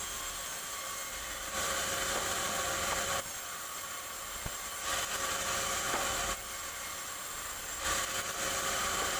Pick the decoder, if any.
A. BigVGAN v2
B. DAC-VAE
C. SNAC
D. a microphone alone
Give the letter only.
D